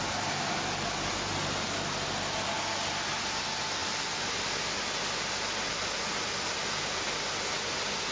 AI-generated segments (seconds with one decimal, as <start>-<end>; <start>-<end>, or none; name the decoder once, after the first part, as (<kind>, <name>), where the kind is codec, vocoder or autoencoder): none